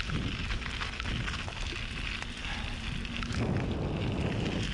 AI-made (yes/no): no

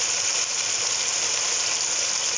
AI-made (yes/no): no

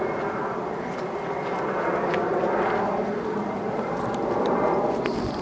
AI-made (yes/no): yes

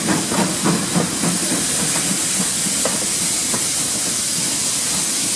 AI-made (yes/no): no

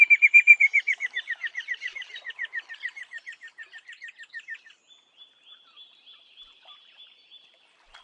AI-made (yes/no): yes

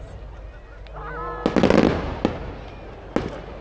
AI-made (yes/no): no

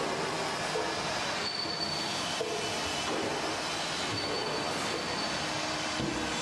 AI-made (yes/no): no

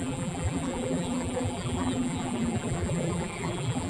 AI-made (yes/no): yes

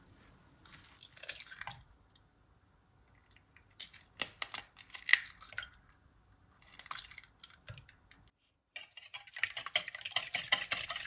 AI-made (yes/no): no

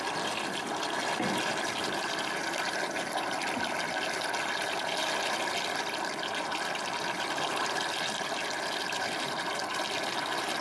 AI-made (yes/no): no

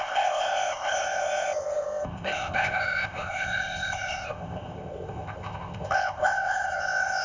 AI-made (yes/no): yes